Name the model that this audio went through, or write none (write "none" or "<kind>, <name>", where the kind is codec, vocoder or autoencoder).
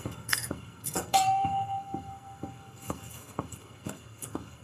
codec, SNAC